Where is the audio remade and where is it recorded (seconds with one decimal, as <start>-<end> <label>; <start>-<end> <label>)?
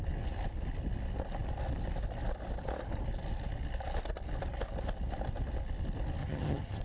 0.0-6.2 recorded; 6.2-6.8 remade